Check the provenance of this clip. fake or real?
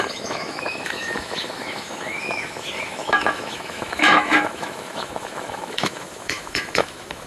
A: fake